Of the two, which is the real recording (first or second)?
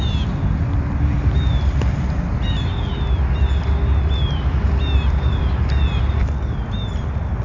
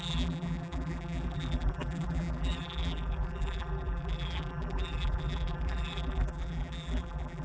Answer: first